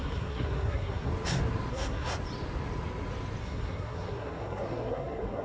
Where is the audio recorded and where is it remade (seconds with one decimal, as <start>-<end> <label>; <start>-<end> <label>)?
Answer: 0.0-1.1 remade; 1.1-1.7 recorded; 1.7-2.1 remade; 2.1-3.4 recorded; 3.4-5.4 remade